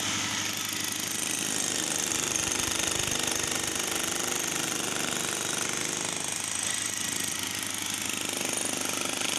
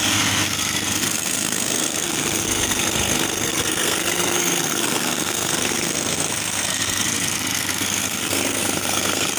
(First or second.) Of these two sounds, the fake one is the second